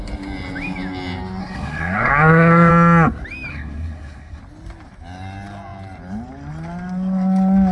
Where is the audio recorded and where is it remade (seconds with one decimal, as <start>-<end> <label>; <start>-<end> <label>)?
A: 0.0-1.4 recorded; 1.4-2.7 remade; 2.7-3.5 recorded; 3.5-4.4 remade; 4.4-7.7 recorded